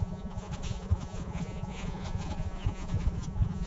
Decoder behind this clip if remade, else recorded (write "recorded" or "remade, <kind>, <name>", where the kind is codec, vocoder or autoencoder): remade, vocoder, Vocos